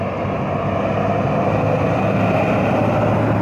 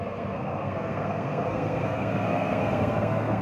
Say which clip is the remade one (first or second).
second